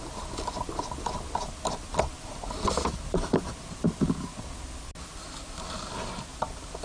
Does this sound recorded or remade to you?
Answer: recorded